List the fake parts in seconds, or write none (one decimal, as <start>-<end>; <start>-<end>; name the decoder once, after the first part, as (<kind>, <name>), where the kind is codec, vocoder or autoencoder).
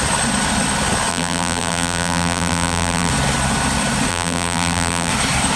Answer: 1.1-3.1 (vocoder, BigVGAN v2); 4.1-5.1